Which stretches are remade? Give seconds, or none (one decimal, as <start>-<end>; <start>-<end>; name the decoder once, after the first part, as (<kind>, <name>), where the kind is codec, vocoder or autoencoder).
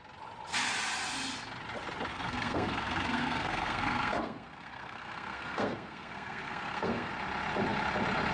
2.1-7.1 (codec, SNAC)